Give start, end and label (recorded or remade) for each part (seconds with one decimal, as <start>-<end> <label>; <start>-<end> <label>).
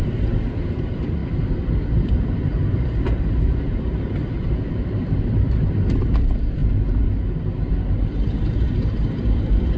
0.0-1.2 remade; 1.2-2.0 recorded; 2.0-6.6 remade; 6.6-7.7 recorded; 7.7-9.8 remade